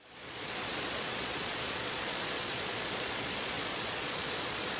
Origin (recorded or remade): remade